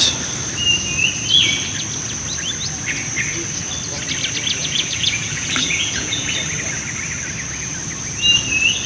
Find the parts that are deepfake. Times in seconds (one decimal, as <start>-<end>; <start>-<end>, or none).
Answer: 4.6-6.3